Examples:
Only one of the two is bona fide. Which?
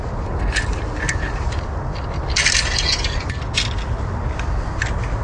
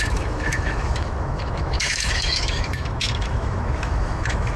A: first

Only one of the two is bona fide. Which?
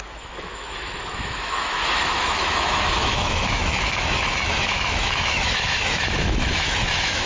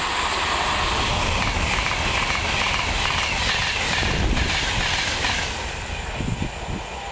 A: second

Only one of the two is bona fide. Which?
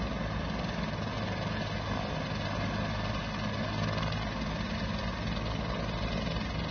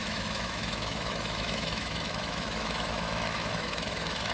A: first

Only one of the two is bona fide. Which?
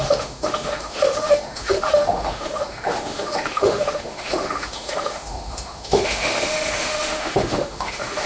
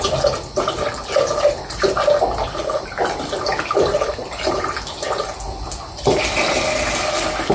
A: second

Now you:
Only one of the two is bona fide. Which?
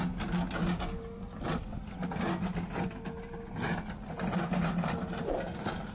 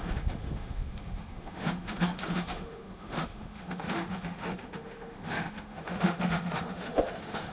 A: first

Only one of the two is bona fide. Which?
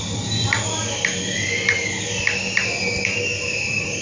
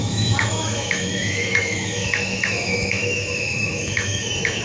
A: first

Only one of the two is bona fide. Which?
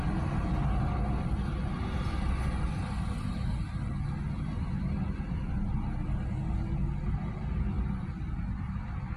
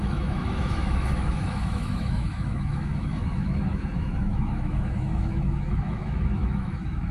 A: first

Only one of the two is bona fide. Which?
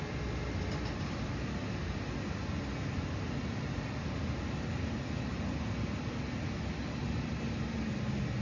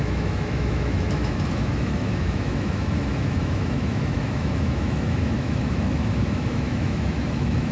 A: first